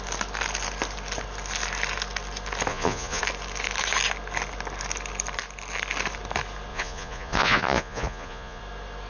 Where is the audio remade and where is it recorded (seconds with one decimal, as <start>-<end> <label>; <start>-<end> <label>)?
0.0-2.7 recorded; 2.7-3.2 remade; 3.2-6.7 recorded; 6.7-8.6 remade; 8.6-9.1 recorded